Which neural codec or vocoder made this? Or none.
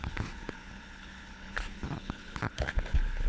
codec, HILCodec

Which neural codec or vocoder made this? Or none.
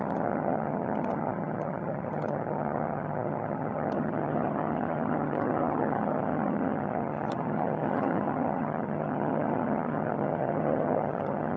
vocoder, HiFi-GAN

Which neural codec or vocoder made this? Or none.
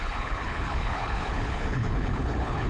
codec, HILCodec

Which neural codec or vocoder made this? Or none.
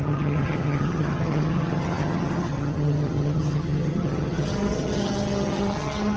vocoder, HiFi-GAN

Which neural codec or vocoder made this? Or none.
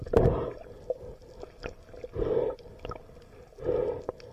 none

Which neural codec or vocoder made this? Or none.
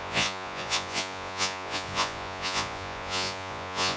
vocoder, Vocos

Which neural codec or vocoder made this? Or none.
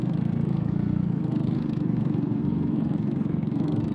codec, SNAC